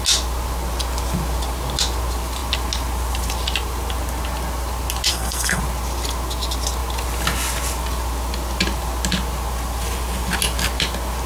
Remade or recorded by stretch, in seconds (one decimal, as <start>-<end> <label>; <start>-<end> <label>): 0.0-5.1 recorded; 5.1-5.6 remade; 5.6-11.3 recorded